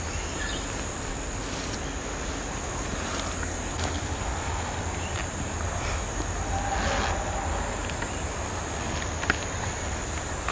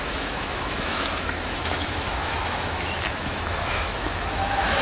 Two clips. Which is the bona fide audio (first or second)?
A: first